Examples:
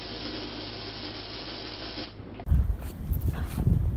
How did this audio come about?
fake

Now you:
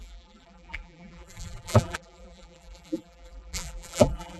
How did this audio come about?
fake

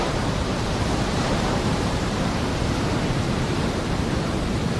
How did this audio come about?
fake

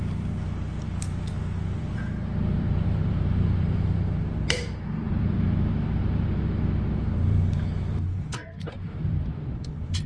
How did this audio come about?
fake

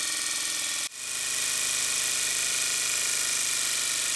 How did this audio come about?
real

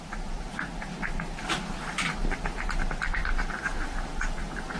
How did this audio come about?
fake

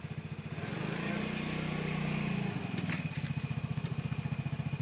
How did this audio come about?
real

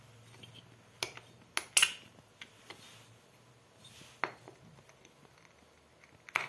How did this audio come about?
real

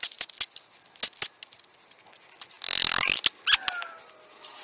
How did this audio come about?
real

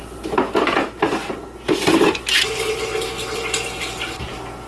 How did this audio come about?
real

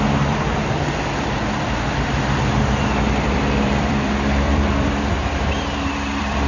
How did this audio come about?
fake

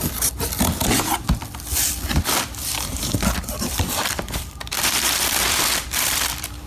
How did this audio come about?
fake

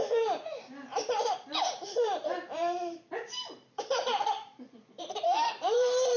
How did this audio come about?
fake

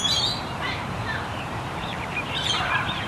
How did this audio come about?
fake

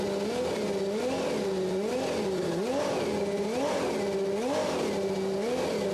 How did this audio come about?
real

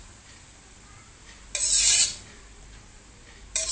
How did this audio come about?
fake